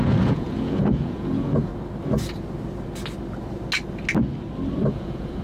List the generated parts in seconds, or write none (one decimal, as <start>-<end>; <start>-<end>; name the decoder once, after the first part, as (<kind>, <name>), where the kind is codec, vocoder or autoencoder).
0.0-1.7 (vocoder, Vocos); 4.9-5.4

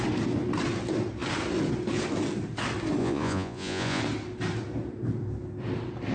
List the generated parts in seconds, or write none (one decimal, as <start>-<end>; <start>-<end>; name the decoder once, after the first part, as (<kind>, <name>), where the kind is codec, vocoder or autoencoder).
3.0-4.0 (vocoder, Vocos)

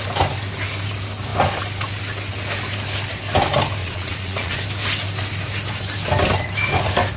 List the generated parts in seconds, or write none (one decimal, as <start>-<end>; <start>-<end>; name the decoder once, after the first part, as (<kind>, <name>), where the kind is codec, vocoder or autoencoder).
3.8-4.6 (vocoder, Vocos)